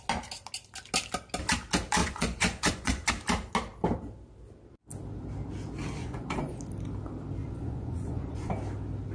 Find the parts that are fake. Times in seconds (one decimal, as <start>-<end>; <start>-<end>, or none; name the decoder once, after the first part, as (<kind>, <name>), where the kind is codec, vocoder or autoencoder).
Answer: 2.0-3.1 (vocoder, Vocos); 6.0-6.6; 7.4-8.5

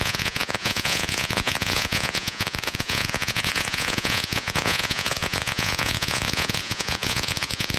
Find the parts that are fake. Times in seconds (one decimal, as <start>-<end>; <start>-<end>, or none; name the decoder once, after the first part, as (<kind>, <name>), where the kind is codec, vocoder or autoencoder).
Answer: 0.0-7.8 (vocoder, Vocos)

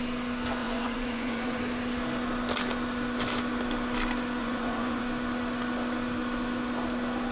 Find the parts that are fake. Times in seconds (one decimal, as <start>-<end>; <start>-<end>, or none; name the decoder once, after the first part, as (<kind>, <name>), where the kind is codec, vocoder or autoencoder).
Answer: 0.6-1.6 (vocoder, Vocos); 4.4-5.0

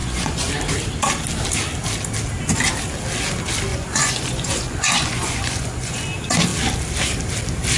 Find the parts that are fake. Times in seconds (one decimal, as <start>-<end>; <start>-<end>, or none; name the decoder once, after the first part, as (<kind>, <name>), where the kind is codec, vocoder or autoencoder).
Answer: 0.0-0.5 (vocoder, Vocos); 3.7-6.0

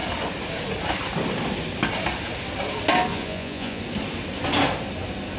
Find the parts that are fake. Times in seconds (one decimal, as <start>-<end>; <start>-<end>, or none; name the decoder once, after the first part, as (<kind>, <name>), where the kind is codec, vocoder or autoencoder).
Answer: 3.1-3.8 (vocoder, Vocos)